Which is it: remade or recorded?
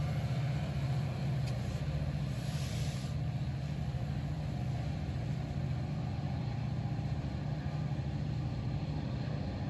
remade